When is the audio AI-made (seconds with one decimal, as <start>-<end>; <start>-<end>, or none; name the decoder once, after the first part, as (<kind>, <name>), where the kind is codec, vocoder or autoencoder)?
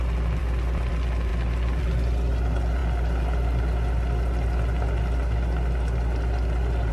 none